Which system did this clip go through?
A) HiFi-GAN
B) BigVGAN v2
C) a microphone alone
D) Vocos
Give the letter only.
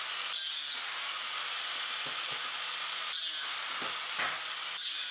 C